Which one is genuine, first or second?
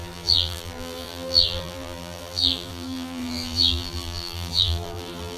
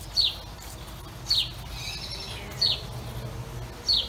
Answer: second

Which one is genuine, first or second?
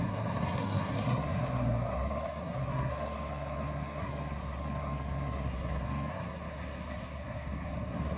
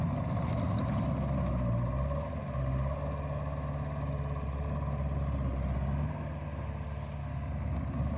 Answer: second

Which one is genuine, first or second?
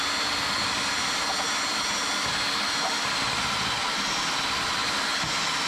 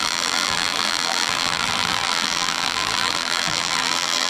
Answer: first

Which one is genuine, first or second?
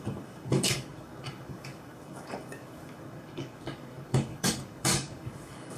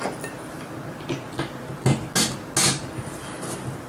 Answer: second